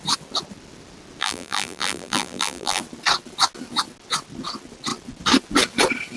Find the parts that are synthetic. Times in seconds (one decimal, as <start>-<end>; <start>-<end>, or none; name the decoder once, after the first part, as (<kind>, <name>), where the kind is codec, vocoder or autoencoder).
1.2-2.8 (vocoder, BigVGAN v2)